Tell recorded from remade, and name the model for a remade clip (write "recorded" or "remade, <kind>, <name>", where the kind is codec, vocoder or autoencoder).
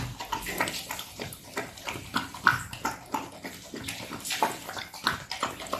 recorded